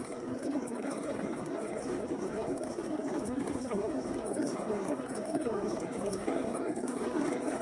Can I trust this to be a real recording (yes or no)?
no